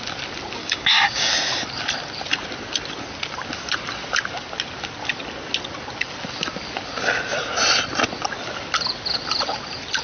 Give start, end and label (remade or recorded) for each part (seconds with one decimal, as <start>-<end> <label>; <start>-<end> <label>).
0.0-0.6 recorded; 0.6-1.3 remade; 1.3-10.0 recorded